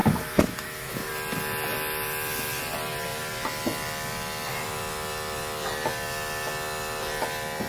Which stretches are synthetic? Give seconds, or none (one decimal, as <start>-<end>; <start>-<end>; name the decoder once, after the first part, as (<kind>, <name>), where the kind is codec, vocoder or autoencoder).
0.0-1.1 (autoencoder, DAC-VAE)